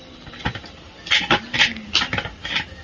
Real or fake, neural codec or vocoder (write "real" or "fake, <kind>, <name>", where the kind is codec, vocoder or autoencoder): real